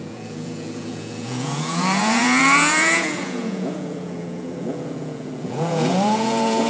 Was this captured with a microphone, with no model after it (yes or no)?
no